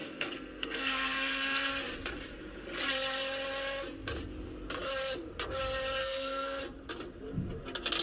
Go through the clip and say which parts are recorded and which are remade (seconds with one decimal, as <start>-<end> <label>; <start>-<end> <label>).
0.0-1.7 remade; 1.7-6.0 recorded; 6.0-6.6 remade; 6.6-8.0 recorded

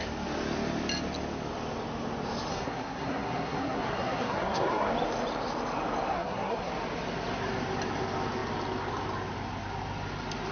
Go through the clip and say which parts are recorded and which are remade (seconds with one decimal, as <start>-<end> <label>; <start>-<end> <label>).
0.0-2.5 recorded; 2.5-4.9 remade; 4.9-6.1 recorded; 6.1-6.7 remade; 6.7-10.5 recorded

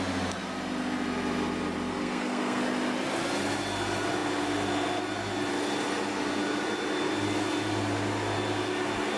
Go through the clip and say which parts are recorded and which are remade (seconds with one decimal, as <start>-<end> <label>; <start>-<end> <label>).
0.0-1.9 recorded; 1.9-2.6 remade; 2.6-9.2 recorded

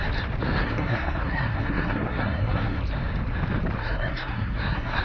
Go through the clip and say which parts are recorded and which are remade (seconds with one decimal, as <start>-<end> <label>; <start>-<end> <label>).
0.0-0.6 recorded; 0.6-2.8 remade; 2.8-3.8 recorded; 3.8-5.0 remade

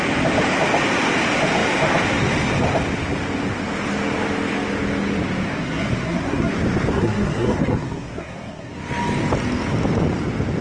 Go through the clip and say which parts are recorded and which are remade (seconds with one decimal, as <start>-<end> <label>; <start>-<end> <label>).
0.0-5.5 recorded; 5.5-6.5 remade; 6.5-6.9 recorded; 6.9-8.7 remade; 8.7-10.6 recorded

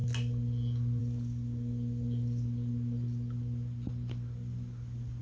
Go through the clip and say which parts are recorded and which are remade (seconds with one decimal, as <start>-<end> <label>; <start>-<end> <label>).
0.0-5.2 recorded